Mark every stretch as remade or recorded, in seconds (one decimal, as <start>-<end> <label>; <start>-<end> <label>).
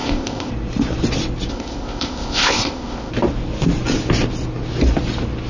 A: 0.0-0.5 remade; 0.5-1.5 recorded; 1.5-3.1 remade; 3.1-5.5 recorded